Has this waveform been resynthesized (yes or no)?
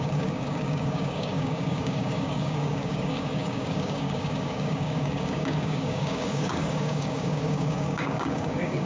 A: yes